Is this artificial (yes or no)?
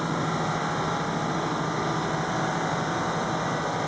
no